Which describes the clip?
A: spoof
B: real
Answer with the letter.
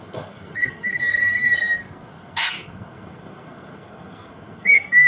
A